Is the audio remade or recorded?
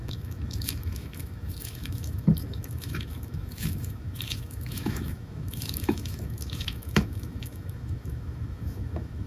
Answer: remade